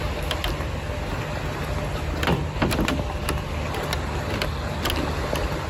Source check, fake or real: real